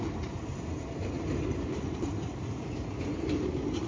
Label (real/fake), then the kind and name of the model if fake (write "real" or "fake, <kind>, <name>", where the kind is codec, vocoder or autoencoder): fake, vocoder, BigVGAN v2